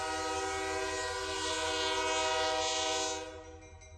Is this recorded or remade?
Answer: recorded